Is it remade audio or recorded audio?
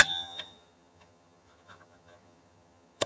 remade